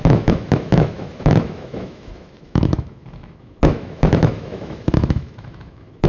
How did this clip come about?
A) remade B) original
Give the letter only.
A